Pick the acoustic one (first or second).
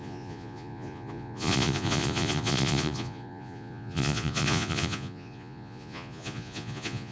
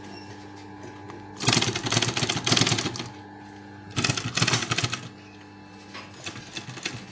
second